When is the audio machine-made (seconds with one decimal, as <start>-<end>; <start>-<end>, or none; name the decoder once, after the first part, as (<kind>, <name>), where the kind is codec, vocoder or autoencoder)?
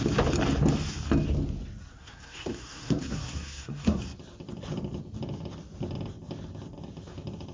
1.9-4.0 (codec, SNAC)